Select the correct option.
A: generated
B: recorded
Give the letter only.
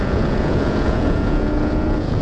A